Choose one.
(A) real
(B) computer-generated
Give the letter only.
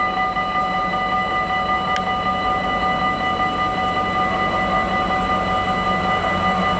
A